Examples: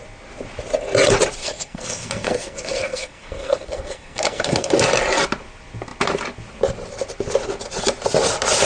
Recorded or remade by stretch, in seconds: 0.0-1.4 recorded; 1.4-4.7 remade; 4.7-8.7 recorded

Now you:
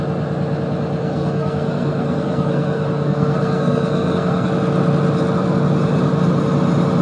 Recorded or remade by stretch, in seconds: 0.0-1.0 recorded; 1.0-4.5 remade; 4.5-7.0 recorded

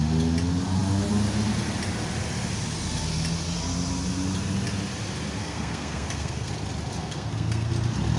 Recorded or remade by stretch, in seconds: 0.0-5.4 recorded; 5.4-6.5 remade; 6.5-7.0 recorded; 7.0-7.7 remade; 7.7-8.2 recorded

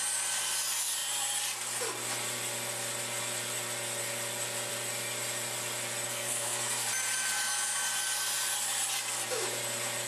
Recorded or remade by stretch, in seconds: 0.0-6.1 recorded; 6.1-6.9 remade; 6.9-10.1 recorded

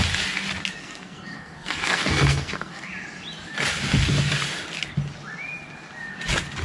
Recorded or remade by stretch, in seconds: 0.0-0.8 recorded; 0.8-2.9 remade; 2.9-6.6 recorded

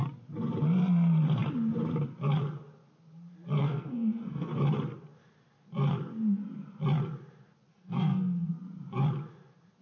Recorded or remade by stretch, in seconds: 0.0-3.6 recorded; 3.6-4.5 remade; 4.5-7.7 recorded; 7.7-8.5 remade; 8.5-9.8 recorded